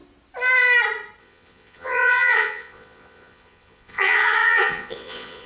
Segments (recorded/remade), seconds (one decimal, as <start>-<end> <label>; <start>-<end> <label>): 0.0-1.2 recorded; 1.2-5.5 remade